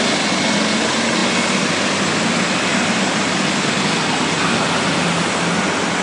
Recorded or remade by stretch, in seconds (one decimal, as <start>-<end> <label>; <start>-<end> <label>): 0.0-6.0 recorded